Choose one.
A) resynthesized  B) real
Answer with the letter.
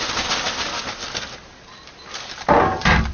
B